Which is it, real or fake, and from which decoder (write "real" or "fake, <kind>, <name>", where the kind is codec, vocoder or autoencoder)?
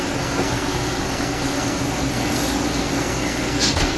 fake, codec, SNAC